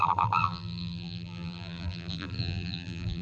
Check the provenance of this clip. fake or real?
fake